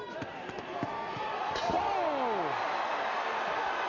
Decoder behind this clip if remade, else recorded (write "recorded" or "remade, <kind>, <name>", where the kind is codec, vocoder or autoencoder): recorded